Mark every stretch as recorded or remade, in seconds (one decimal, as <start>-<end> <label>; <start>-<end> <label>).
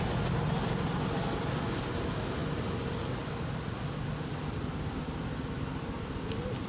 0.0-6.7 recorded